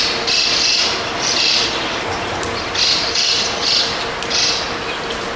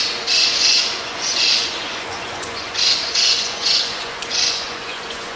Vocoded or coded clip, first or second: second